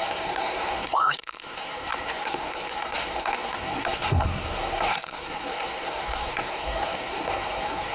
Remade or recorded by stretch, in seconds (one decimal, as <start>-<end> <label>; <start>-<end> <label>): 0.0-7.9 remade